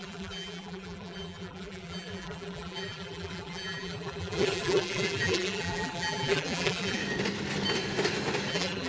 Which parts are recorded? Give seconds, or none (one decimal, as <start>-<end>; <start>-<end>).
7.0-8.5